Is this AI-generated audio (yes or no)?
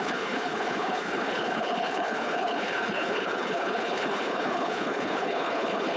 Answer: yes